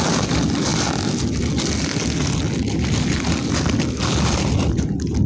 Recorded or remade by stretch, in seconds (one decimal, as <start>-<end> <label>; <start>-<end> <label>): 0.0-5.3 recorded